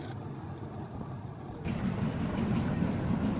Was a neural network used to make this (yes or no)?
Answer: no